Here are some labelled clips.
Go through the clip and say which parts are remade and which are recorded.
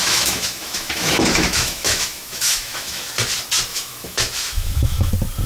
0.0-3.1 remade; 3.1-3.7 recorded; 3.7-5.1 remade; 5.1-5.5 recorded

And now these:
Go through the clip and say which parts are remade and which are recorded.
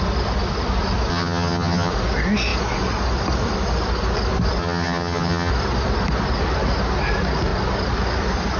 0.0-1.1 recorded; 1.1-1.9 remade; 1.9-4.6 recorded; 4.6-5.5 remade; 5.5-8.6 recorded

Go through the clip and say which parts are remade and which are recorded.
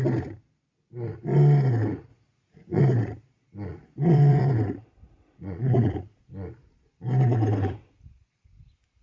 0.0-2.1 recorded; 2.1-2.8 remade; 2.8-3.7 recorded; 3.7-4.5 remade; 4.5-5.0 recorded; 5.0-6.2 remade; 6.2-9.0 recorded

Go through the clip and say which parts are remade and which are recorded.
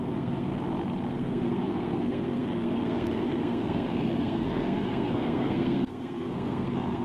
0.0-0.5 remade; 0.5-1.1 recorded; 1.1-7.0 remade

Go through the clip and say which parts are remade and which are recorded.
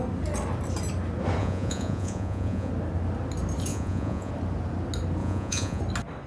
0.0-1.4 recorded; 1.4-2.7 remade; 2.7-3.7 recorded; 3.7-4.3 remade; 4.3-5.2 recorded; 5.2-5.8 remade; 5.8-6.3 recorded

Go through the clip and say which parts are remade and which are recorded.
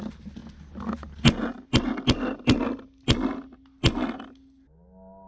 0.0-5.3 recorded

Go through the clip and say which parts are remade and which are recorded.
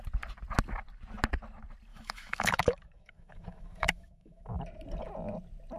0.0-1.9 recorded; 1.9-4.6 remade; 4.6-5.8 recorded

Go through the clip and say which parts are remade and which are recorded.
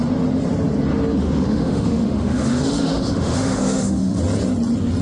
0.0-1.2 recorded; 1.2-4.2 remade; 4.2-5.0 recorded